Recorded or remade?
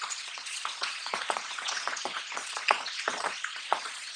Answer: remade